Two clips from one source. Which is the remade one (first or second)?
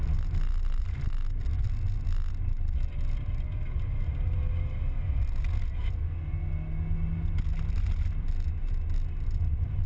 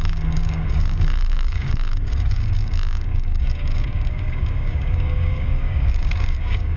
second